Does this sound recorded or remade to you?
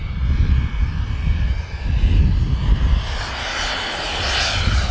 recorded